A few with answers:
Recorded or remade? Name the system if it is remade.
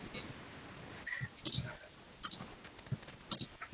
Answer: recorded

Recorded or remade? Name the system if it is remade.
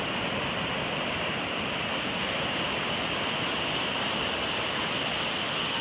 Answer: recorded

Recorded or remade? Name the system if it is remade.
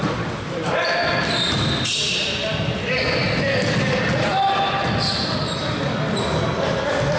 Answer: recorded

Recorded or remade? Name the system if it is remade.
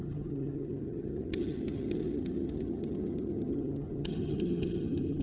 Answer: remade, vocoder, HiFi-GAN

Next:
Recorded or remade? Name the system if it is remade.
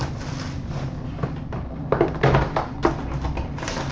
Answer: recorded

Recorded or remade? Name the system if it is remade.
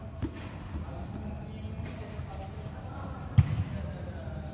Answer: recorded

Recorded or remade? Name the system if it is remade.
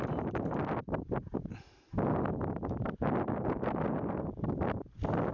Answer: recorded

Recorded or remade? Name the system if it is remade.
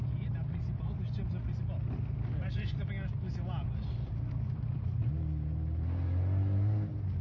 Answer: recorded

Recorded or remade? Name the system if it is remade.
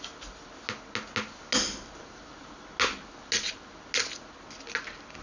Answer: recorded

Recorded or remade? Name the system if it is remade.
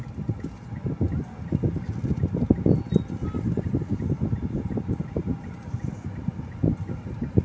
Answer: recorded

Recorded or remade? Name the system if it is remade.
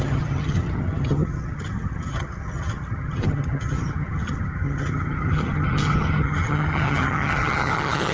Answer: remade, vocoder, HiFi-GAN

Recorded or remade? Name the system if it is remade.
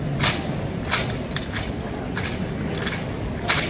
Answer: recorded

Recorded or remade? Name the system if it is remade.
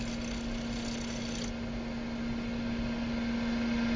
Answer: recorded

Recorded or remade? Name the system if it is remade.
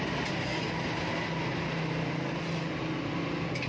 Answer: recorded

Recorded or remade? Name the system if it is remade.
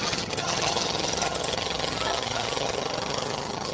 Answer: remade, vocoder, HiFi-GAN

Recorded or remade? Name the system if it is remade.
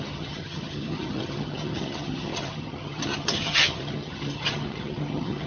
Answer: remade, vocoder, HiFi-GAN